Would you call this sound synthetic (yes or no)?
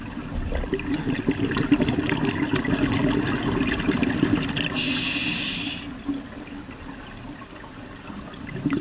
no